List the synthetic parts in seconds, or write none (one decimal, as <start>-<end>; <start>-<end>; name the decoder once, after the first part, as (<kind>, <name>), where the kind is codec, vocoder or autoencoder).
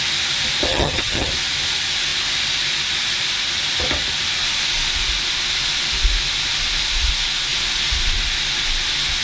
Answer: 0.7-1.3 (vocoder, HiFi-GAN)